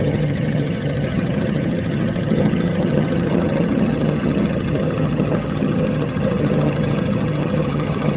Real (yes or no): no